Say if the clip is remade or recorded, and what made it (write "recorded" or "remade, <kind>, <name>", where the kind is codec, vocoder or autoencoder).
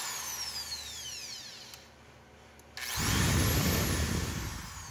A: recorded